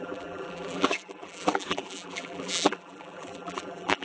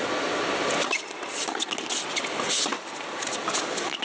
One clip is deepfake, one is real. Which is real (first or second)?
second